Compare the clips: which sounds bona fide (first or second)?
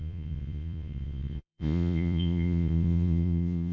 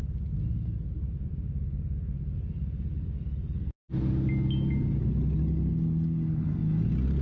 second